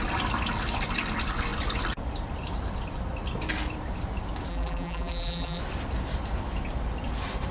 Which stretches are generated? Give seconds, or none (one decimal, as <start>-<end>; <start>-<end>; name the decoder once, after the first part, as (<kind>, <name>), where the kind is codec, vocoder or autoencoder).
4.5-5.6 (vocoder, BigVGAN v2)